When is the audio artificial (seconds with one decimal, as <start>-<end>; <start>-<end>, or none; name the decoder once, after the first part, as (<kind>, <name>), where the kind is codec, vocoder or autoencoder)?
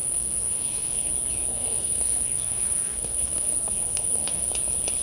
0.0-1.1 (codec, SNAC); 1.5-4.5